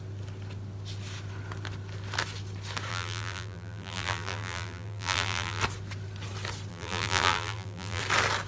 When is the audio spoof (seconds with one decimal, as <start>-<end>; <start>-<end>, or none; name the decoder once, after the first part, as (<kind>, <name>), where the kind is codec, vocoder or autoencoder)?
2.9-5.6 (vocoder, BigVGAN v2); 6.7-8.0